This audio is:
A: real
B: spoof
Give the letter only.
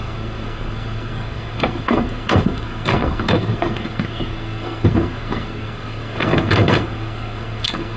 B